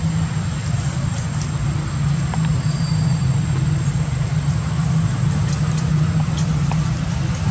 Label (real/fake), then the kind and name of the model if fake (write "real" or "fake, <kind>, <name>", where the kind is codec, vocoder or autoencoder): real